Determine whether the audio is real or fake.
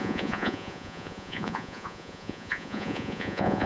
fake